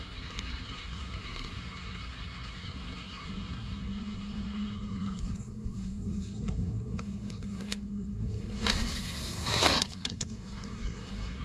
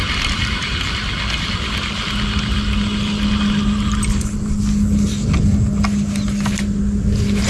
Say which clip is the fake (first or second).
first